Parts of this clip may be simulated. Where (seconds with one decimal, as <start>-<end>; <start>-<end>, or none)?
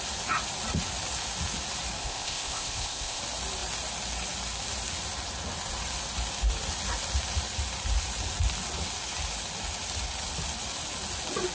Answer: 2.0-3.2